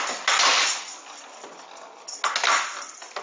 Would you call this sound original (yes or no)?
yes